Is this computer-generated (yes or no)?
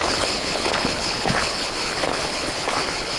yes